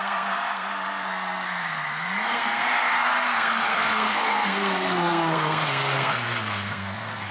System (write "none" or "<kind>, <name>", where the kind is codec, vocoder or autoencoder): codec, SNAC